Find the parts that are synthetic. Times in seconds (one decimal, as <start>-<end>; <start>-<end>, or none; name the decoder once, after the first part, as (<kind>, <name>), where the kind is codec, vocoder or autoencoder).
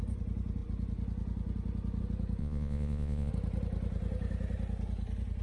2.4-3.3 (vocoder, Vocos)